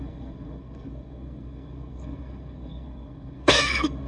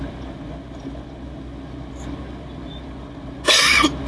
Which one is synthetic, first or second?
first